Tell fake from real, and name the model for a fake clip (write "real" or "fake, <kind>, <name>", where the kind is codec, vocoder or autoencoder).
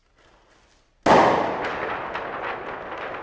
real